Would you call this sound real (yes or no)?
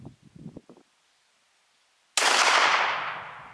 yes